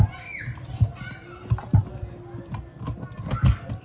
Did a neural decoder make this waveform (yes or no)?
no